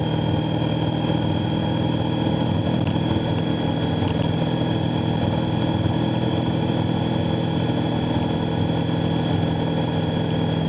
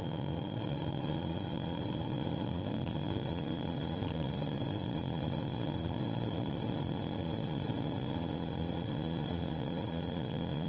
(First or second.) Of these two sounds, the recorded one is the first